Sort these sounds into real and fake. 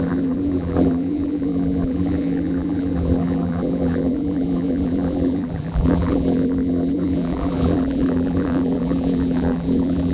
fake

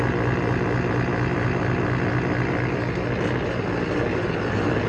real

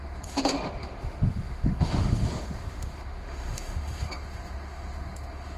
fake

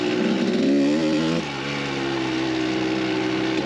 real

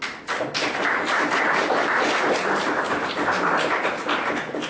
real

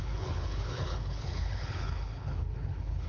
fake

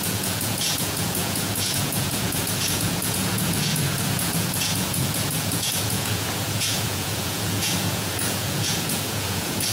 fake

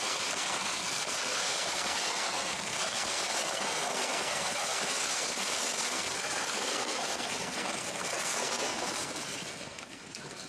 fake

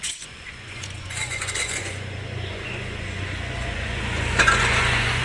fake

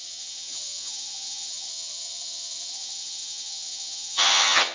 fake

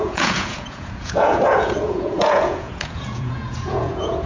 fake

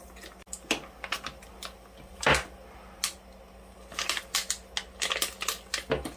real